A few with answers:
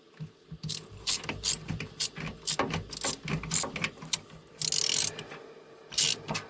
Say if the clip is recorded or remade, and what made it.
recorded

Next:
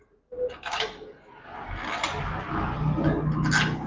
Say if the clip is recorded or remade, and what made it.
recorded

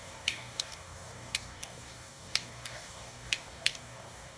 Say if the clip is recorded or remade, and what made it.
remade, codec, DAC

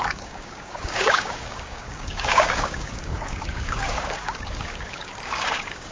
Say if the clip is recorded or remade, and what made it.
remade, codec, DAC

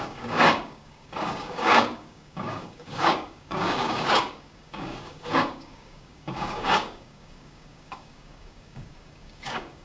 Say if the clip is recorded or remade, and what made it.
remade, codec, DAC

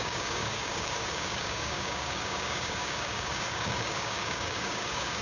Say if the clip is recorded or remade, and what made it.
remade, codec, DAC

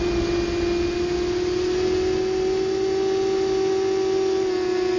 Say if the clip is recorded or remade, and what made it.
recorded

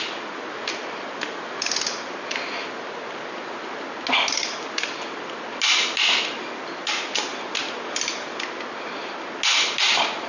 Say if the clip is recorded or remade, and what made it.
recorded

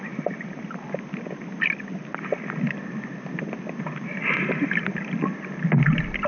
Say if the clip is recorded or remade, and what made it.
recorded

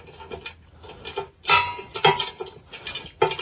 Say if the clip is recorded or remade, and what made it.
recorded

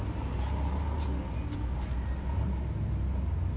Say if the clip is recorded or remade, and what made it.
recorded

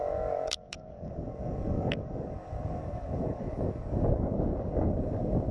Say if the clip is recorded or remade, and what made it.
remade, codec, DAC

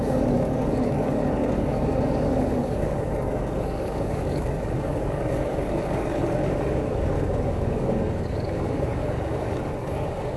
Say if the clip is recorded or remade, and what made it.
remade, codec, DAC